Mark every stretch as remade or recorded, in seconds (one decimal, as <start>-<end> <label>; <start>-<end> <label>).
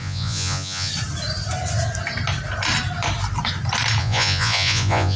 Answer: 0.0-0.9 remade; 0.9-4.0 recorded; 4.0-5.2 remade